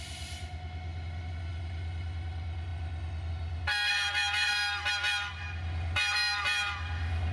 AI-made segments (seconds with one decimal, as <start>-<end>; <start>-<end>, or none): none